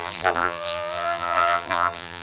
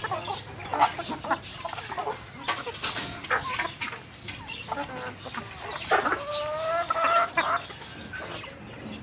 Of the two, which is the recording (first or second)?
second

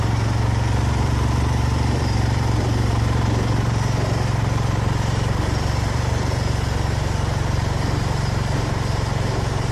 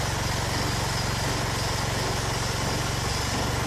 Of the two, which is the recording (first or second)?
second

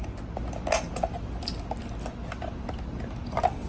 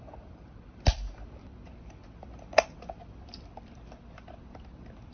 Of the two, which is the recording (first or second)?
first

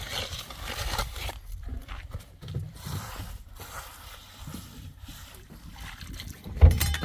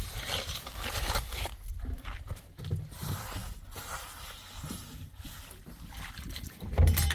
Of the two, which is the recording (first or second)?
second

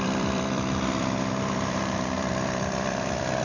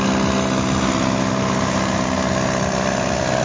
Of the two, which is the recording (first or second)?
second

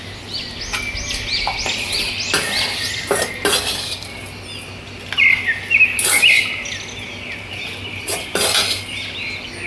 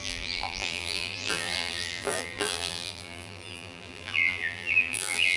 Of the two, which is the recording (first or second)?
first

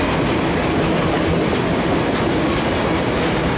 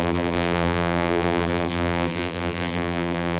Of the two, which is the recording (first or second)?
first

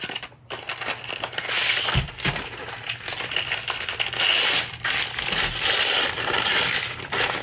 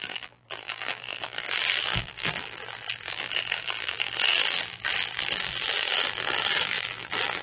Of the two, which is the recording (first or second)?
first